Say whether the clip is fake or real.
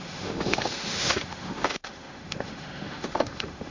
fake